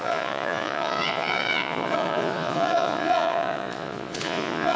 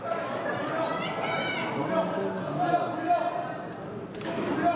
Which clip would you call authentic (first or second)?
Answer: second